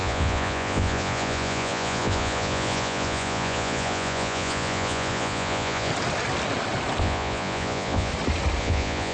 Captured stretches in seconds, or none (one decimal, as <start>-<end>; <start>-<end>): 5.9-7.0; 8.1-8.6

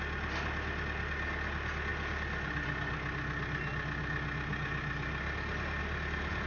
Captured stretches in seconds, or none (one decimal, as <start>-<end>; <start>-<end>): 0.0-6.5

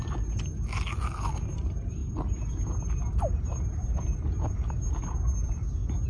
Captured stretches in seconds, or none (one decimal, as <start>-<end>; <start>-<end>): 0.0-6.1

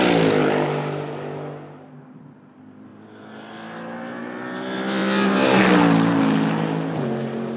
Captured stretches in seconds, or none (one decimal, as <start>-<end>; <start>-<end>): 0.0-7.6